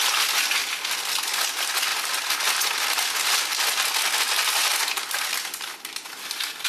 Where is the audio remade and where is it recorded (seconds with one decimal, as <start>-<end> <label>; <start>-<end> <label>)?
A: 0.0-0.6 recorded; 0.6-1.3 remade; 1.3-6.7 recorded